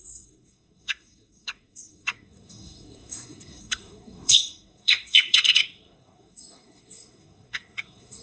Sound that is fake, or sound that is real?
fake